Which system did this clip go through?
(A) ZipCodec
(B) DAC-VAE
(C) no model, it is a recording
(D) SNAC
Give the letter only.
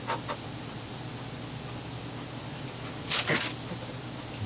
C